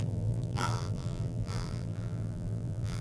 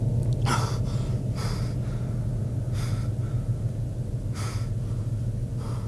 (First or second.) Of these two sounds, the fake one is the first